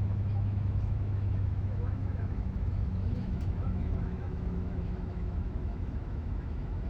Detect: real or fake fake